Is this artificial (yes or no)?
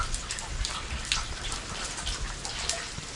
no